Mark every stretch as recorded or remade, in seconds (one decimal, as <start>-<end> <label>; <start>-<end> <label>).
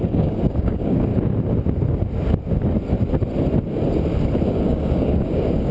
0.0-1.1 remade; 1.1-4.5 recorded; 4.5-5.7 remade